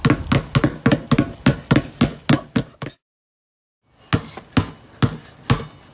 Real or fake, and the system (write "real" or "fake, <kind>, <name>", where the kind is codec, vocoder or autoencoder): real